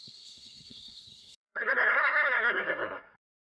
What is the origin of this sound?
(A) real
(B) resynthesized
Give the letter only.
B